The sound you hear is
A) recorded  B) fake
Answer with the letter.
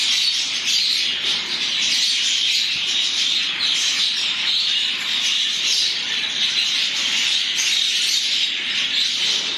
B